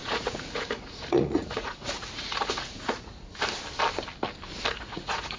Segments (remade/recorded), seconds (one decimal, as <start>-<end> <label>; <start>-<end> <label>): 0.0-3.3 remade; 3.3-4.7 recorded; 4.7-5.4 remade